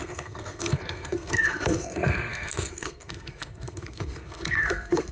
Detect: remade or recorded remade